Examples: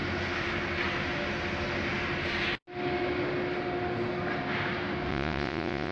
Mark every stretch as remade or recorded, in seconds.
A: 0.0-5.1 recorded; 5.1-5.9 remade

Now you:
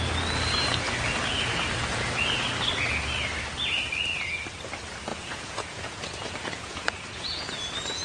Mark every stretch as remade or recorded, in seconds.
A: 0.0-5.1 recorded; 5.1-7.4 remade; 7.4-8.0 recorded